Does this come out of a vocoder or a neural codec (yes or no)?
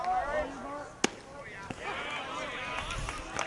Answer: no